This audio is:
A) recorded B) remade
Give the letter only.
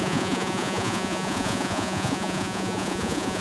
B